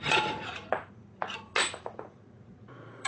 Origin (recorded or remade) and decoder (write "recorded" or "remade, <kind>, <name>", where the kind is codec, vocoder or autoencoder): remade, vocoder, Vocos